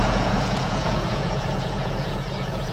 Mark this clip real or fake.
fake